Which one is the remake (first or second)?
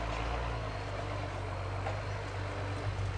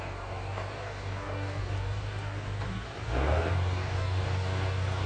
second